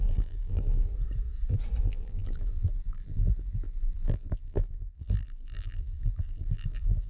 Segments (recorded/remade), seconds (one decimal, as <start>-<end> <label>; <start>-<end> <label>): 0.0-0.9 remade; 0.9-1.8 recorded; 1.8-7.1 remade